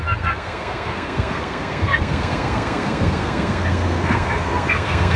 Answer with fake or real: fake